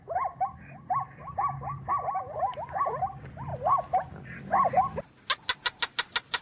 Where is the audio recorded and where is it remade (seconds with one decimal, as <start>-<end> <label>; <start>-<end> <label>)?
0.0-6.4 recorded